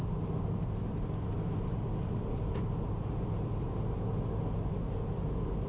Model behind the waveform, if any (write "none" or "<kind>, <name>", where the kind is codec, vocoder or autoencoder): none